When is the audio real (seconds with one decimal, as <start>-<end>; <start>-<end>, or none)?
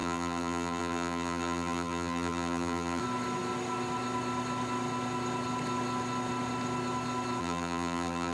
3.0-7.4